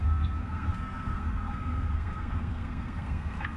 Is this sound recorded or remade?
remade